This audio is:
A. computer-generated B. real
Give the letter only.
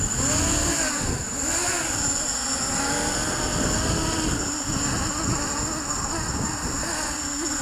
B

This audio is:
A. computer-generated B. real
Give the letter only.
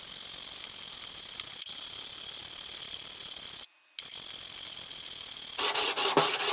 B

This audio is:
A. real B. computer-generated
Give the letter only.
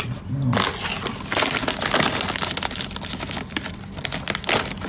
A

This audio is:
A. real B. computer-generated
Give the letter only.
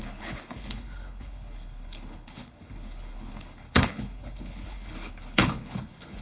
B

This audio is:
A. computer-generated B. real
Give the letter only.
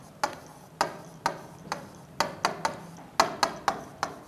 B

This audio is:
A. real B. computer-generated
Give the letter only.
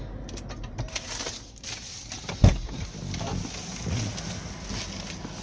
A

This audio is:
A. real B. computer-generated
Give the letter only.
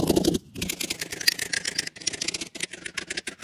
A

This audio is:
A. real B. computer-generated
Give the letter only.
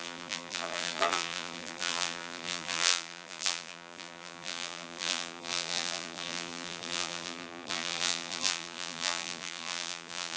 B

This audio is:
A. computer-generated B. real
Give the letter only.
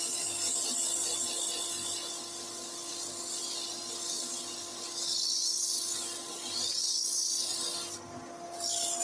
B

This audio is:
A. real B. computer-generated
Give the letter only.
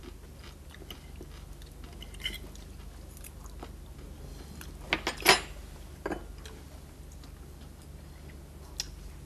A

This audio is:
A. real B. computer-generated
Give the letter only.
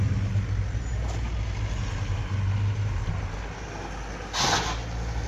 A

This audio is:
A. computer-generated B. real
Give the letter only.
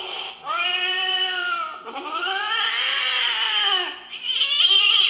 A